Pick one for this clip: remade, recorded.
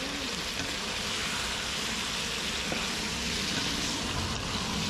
recorded